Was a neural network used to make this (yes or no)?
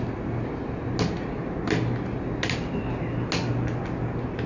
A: no